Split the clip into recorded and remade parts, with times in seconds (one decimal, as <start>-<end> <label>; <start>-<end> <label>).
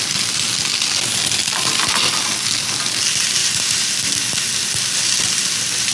0.0-5.9 recorded